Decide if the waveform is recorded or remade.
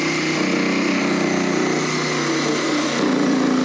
recorded